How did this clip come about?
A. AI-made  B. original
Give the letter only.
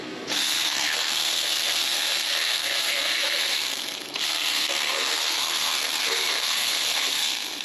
A